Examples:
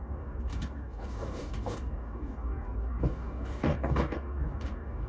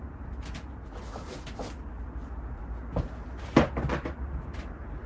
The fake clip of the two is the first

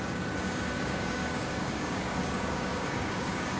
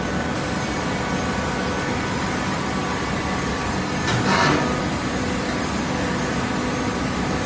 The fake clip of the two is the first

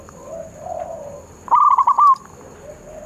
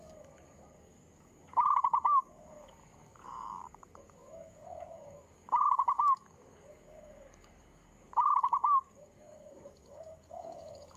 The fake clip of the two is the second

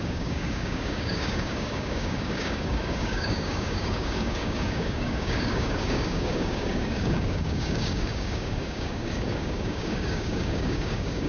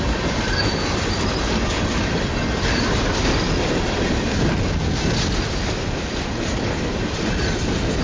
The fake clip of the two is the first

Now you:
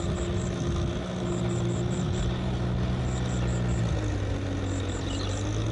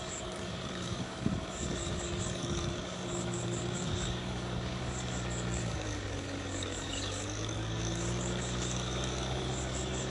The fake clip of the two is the second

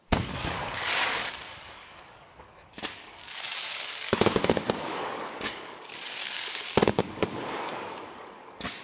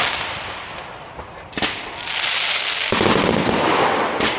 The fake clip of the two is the first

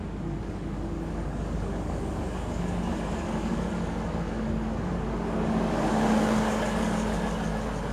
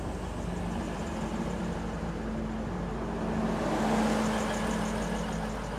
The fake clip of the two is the first